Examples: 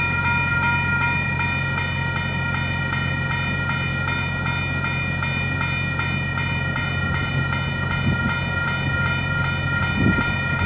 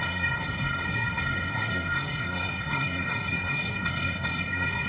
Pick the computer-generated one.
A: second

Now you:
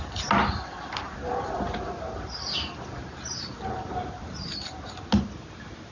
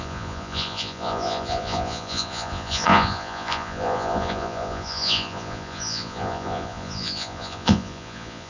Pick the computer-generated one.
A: second